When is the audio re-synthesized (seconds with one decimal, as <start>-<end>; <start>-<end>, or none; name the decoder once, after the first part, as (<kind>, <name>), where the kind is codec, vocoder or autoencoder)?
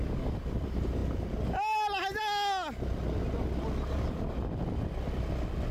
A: none